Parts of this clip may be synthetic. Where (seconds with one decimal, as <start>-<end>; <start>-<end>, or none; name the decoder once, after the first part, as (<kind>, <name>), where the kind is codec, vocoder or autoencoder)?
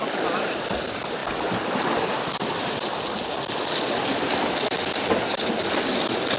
none